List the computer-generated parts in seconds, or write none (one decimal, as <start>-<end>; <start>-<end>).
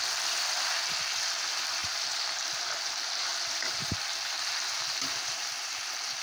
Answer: 1.8-2.5